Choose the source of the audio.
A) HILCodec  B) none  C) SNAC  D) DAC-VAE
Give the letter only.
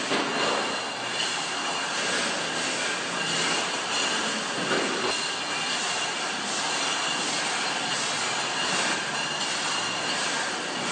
B